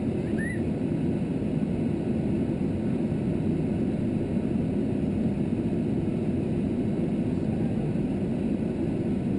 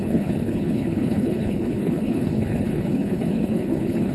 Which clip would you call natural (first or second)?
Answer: first